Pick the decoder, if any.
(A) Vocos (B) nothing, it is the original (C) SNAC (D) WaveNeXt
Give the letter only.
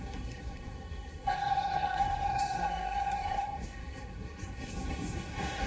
C